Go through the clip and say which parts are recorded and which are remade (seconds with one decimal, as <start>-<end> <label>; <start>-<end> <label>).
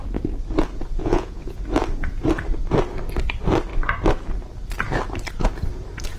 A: 0.0-1.0 recorded; 1.0-1.6 remade; 1.6-6.2 recorded